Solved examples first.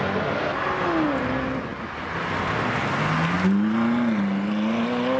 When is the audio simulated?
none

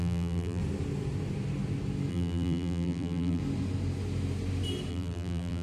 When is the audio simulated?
0.0-0.6 (vocoder, BigVGAN v2); 2.1-3.4; 4.9-5.6

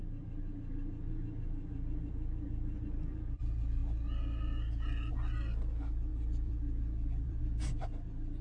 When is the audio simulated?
6.1-7.4 (vocoder, BigVGAN v2)

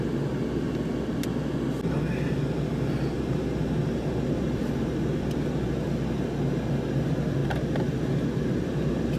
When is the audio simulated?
none

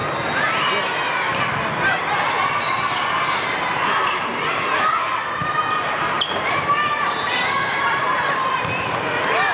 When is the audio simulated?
4.0-4.9 (vocoder, BigVGAN v2); 5.4-8.5

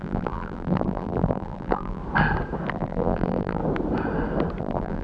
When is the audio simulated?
0.0-2.0 (vocoder, BigVGAN v2); 2.7-3.6; 4.6-5.0

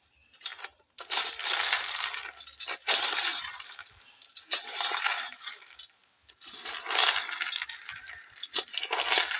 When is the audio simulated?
2.8-5.6 (vocoder, BigVGAN v2)